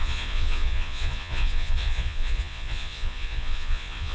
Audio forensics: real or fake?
fake